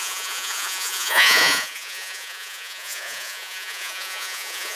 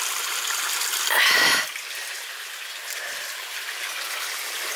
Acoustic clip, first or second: second